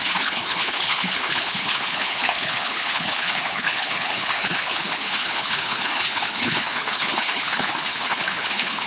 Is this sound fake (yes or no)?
yes